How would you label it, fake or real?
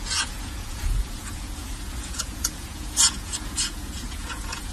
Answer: fake